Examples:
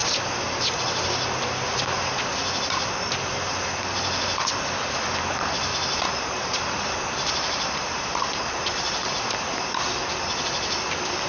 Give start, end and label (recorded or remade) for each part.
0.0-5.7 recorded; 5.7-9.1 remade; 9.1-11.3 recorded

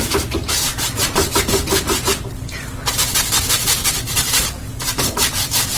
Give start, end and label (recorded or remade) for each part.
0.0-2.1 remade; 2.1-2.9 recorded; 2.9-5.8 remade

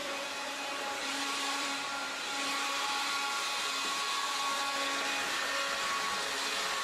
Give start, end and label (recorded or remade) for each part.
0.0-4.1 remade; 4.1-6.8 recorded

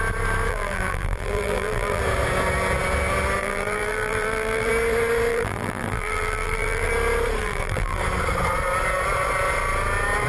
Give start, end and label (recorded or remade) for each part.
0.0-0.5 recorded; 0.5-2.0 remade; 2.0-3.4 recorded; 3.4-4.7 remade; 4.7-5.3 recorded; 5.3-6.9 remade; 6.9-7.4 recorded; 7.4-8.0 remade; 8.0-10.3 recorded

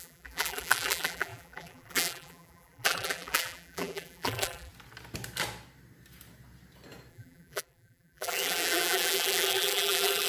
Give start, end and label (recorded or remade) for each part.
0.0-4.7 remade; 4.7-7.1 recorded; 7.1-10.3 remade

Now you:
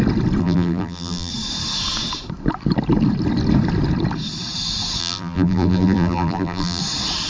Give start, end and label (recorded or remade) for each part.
0.0-0.4 recorded; 0.4-1.3 remade; 1.3-5.0 recorded; 5.0-6.8 remade; 6.8-7.3 recorded

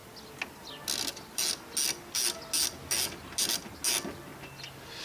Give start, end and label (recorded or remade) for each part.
0.0-5.0 recorded

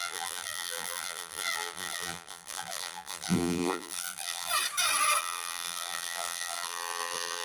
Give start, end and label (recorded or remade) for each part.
0.0-4.5 remade; 4.5-5.2 recorded; 5.2-7.4 remade